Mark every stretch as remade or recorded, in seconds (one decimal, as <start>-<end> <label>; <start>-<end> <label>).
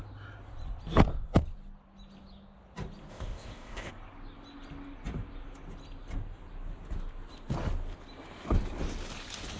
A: 0.0-3.1 recorded; 3.1-3.9 remade; 3.9-9.6 recorded